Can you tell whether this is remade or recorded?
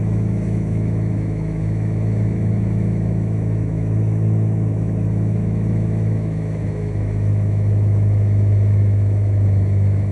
remade